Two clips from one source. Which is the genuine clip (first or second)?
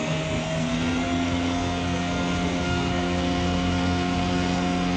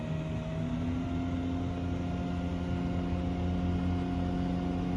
second